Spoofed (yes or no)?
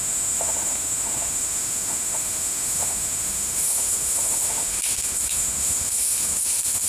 yes